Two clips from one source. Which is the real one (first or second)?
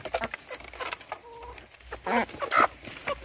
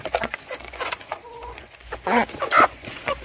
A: first